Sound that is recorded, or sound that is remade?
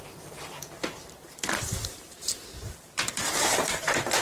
remade